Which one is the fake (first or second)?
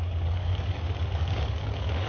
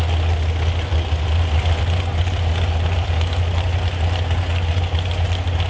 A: first